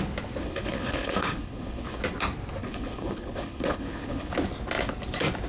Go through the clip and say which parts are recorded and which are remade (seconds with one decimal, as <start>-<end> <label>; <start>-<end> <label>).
0.0-0.4 recorded; 0.4-2.0 remade; 2.0-2.6 recorded; 2.6-4.3 remade; 4.3-5.5 recorded